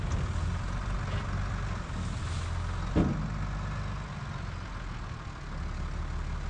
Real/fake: real